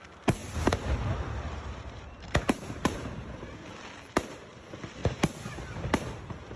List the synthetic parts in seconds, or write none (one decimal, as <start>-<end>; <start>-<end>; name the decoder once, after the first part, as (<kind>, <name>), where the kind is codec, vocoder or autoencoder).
0.4-0.9 (vocoder, BigVGAN v2); 1.5-3.5; 5.0-5.6